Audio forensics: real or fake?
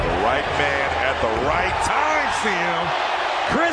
real